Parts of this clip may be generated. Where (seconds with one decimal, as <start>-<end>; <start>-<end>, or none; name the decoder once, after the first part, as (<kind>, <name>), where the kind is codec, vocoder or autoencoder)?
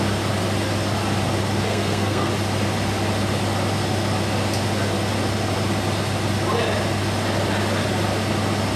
1.7-2.3 (codec, SNAC)